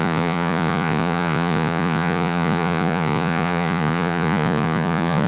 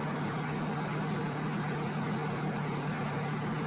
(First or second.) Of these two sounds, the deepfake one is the first